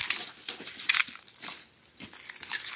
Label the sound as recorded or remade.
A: recorded